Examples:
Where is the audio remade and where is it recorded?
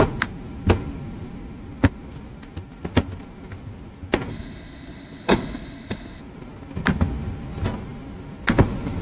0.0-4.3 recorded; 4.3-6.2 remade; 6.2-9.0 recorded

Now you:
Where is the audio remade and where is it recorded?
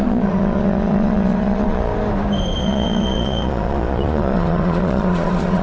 0.0-1.9 remade; 1.9-2.6 recorded; 2.6-5.6 remade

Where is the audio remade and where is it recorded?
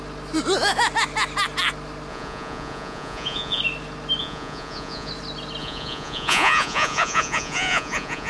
0.0-2.1 recorded; 2.1-3.6 remade; 3.6-4.2 recorded; 4.2-5.1 remade; 5.1-5.6 recorded; 5.6-8.3 remade